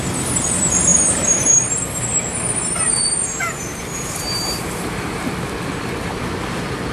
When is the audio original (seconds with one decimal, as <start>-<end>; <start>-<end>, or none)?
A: 0.0-0.9; 1.6-2.9; 5.3-6.9